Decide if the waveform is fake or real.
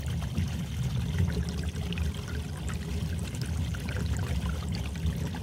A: real